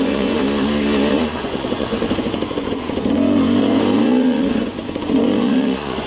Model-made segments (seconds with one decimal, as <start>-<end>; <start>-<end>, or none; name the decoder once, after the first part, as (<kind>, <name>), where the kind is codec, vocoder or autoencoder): 0.0-0.4 (vocoder, Vocos); 1.1-6.1